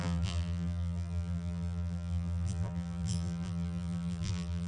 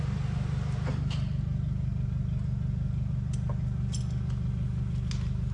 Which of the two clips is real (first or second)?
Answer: second